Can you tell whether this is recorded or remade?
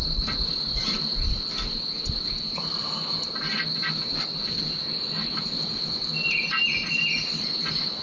recorded